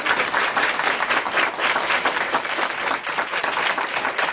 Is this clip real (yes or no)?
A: yes